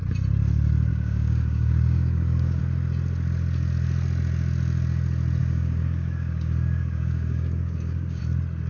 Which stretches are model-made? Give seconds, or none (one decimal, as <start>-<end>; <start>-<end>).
0.9-2.6; 5.4-8.2